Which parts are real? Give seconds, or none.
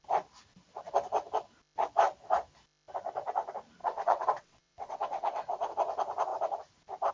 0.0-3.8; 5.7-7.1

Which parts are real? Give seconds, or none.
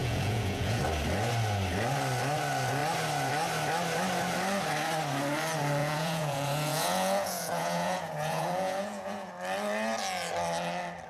0.8-5.8; 9.3-11.1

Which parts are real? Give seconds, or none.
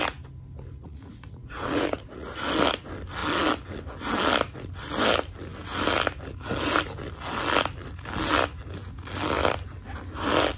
0.0-0.8; 2.4-10.6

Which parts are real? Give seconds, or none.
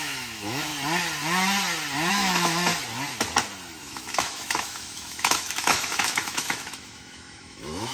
0.7-2.1; 2.7-3.8